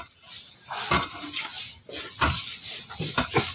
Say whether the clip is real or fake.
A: real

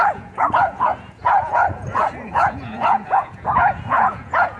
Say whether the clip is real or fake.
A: fake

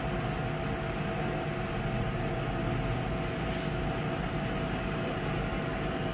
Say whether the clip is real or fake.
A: real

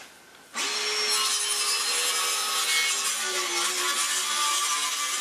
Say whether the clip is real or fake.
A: real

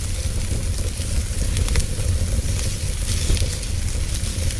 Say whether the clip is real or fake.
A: real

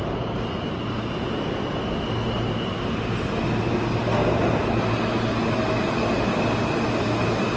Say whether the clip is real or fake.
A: real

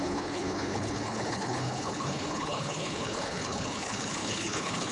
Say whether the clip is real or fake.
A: fake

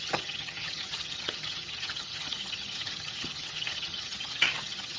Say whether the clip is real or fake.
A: fake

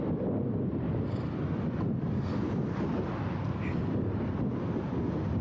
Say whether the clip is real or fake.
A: real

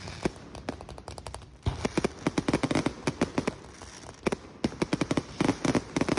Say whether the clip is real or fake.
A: real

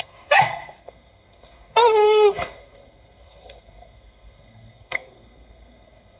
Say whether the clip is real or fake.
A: fake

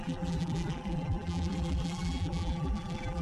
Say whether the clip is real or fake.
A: fake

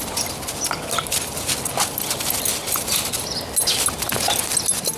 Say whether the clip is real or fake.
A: real